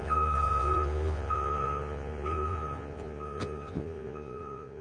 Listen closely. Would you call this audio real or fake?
fake